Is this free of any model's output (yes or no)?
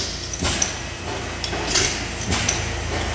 yes